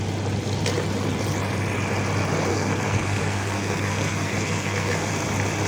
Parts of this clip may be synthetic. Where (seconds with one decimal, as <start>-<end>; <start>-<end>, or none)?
2.5-5.1